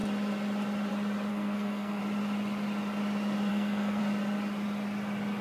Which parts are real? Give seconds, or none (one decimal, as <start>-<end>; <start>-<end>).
0.0-1.3; 2.0-3.5; 4.0-5.4